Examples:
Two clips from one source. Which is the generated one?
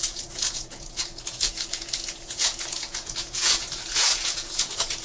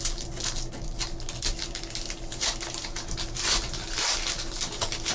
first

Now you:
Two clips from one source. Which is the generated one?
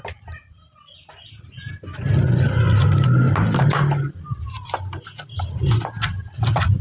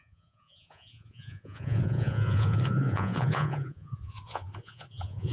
second